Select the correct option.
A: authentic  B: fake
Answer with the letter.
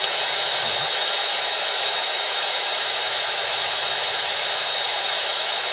B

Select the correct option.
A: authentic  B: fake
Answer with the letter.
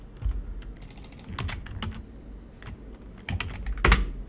A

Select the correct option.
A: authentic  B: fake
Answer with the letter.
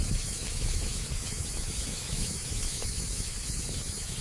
B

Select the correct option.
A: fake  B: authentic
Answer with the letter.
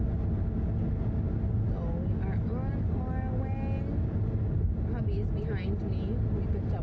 B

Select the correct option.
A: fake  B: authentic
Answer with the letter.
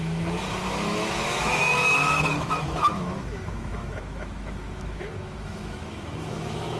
A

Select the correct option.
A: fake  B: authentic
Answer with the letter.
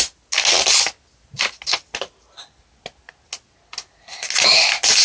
B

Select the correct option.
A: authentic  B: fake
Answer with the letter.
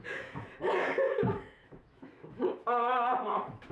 B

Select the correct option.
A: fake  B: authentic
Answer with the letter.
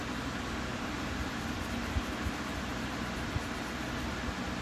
B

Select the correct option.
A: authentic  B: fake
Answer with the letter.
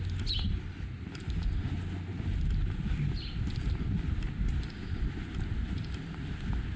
A